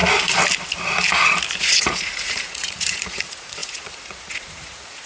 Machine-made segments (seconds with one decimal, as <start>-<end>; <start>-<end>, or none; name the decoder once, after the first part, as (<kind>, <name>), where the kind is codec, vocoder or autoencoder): 1.6-5.1 (vocoder, Vocos)